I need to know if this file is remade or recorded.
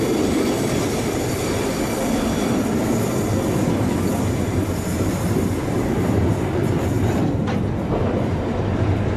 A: remade